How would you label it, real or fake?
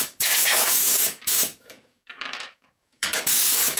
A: fake